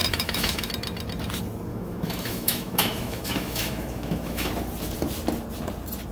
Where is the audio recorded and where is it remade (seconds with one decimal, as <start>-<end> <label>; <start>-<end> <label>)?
0.0-0.7 remade; 0.7-1.7 recorded; 1.7-4.5 remade; 4.5-6.1 recorded